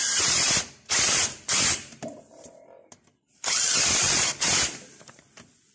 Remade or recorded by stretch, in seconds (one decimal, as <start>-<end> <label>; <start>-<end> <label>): 0.0-1.8 recorded; 1.8-5.2 remade; 5.2-5.7 recorded